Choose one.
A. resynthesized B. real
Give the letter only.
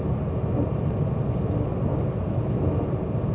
B